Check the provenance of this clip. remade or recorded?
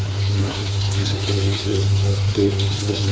remade